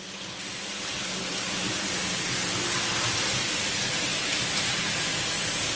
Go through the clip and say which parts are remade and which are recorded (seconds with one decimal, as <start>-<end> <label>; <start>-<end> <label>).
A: 0.0-5.8 recorded